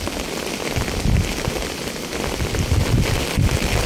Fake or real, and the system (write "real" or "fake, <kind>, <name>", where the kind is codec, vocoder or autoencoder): real